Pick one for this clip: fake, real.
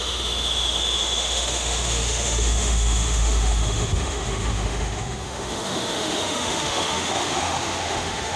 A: fake